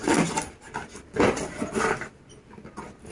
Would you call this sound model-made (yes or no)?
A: no